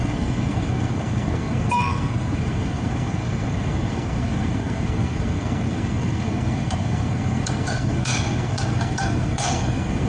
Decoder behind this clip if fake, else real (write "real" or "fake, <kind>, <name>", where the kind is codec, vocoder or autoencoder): fake, codec, SNAC